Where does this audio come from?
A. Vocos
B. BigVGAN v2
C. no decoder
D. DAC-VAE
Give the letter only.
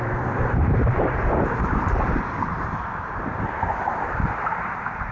B